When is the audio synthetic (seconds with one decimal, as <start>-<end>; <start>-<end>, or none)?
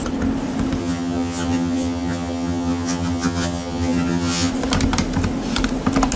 0.8-4.5